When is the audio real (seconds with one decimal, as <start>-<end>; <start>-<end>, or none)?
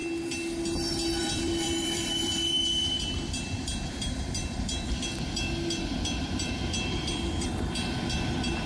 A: 0.0-1.2